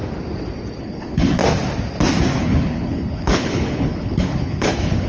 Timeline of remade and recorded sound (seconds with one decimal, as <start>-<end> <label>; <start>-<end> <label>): 0.0-0.8 recorded; 0.8-1.4 remade; 1.4-2.4 recorded; 2.4-5.1 remade